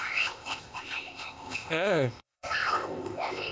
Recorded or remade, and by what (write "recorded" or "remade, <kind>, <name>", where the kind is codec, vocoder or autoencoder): remade, codec, ZipCodec